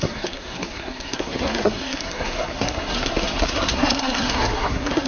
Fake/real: fake